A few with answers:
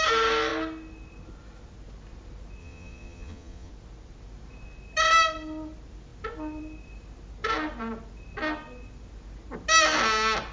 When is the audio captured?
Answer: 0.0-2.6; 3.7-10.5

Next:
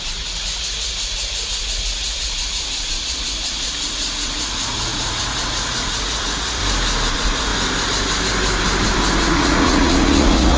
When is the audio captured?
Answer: 6.6-7.1; 7.5-9.2

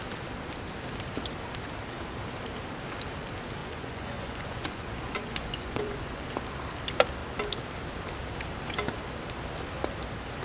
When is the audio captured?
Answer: 0.0-3.6; 6.2-10.4